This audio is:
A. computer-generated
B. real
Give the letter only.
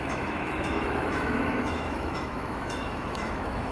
A